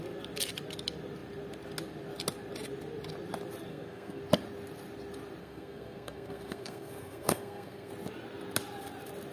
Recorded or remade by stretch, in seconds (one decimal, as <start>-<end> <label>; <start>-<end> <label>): 0.0-3.7 recorded; 3.7-4.2 remade; 4.2-5.4 recorded; 5.4-7.9 remade; 7.9-9.3 recorded